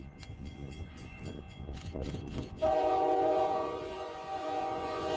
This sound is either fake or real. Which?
fake